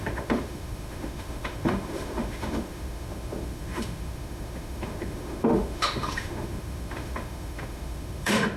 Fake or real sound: fake